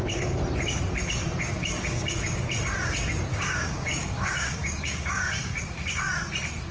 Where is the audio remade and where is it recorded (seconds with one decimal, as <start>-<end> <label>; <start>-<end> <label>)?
0.0-1.6 recorded; 1.6-2.4 remade; 2.4-3.3 recorded; 3.3-6.0 remade; 6.0-6.7 recorded